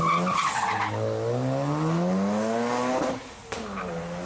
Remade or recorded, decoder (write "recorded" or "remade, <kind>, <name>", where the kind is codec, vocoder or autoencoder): recorded